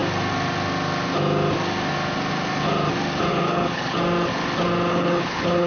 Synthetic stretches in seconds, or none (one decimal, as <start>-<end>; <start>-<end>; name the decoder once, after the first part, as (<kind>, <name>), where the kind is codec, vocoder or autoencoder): 3.3-4.0 (codec, HILCodec); 4.9-5.7